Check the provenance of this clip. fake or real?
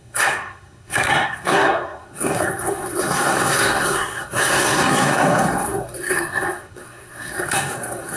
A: fake